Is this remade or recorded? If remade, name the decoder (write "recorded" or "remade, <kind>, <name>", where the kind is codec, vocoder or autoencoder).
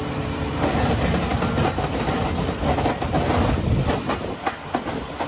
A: recorded